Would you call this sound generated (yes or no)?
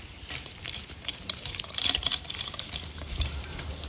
yes